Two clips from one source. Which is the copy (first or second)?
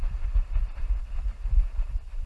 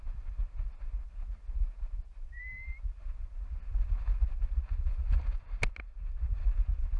first